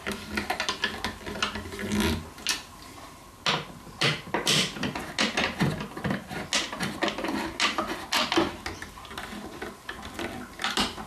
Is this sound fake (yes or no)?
no